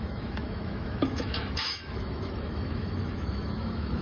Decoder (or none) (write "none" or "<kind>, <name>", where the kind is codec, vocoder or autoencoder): autoencoder, DAC-VAE